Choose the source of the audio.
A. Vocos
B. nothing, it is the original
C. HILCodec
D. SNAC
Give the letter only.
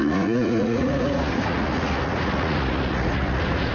A